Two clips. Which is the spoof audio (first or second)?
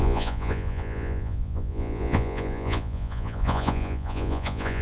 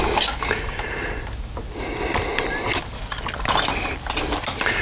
first